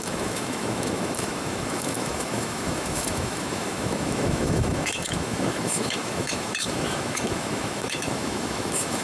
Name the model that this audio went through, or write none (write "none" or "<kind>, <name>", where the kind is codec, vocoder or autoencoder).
autoencoder, DAC-VAE